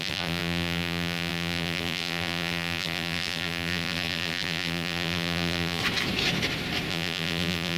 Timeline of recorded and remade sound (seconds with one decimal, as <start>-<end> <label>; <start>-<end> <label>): 0.0-5.8 remade; 5.8-6.9 recorded; 6.9-7.8 remade